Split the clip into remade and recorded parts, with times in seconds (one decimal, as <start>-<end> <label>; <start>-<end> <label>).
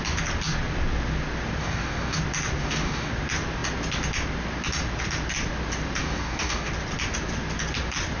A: 0.0-1.6 recorded; 1.6-2.2 remade; 2.2-2.6 recorded; 2.6-3.1 remade; 3.1-6.0 recorded; 6.0-6.7 remade; 6.7-8.2 recorded